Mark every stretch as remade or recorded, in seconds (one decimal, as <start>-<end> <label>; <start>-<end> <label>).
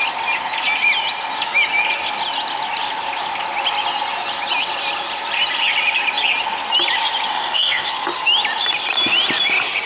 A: 0.0-7.3 recorded; 7.3-7.9 remade; 7.9-9.9 recorded